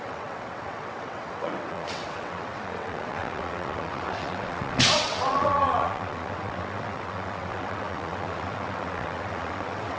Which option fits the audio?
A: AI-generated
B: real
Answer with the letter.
A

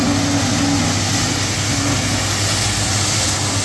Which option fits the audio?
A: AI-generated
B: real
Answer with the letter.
B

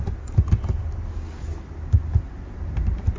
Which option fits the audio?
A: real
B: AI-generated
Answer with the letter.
A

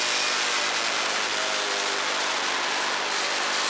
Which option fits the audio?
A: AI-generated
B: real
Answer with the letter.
B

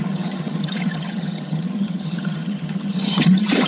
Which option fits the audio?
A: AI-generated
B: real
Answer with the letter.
A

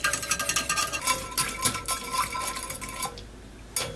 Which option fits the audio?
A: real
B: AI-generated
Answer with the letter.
A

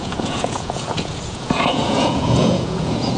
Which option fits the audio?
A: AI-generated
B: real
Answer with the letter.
A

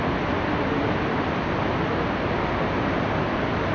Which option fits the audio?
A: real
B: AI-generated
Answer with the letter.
A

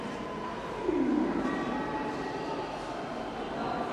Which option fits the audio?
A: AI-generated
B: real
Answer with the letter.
B